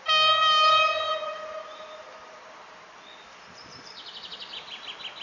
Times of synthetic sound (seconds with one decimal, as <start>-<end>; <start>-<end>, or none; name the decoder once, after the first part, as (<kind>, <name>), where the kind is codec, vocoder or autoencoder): 1.1-2.9 (vocoder, BigVGAN v2)